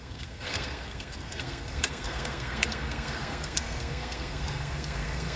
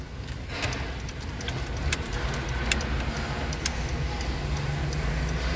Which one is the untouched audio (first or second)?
second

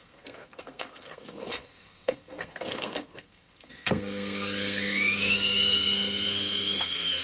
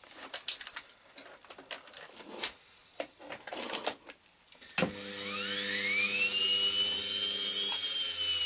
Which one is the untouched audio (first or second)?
second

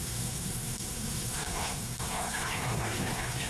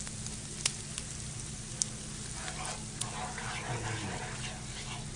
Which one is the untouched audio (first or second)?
second